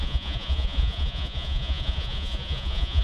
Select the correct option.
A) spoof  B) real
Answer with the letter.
A